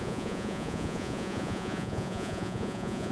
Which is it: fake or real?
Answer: fake